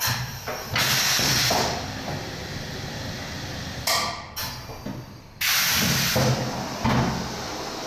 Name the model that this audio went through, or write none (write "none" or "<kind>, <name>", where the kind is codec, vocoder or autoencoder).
none